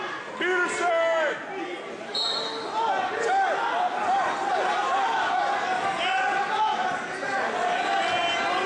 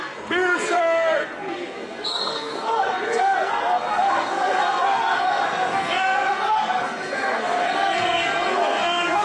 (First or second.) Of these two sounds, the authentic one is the first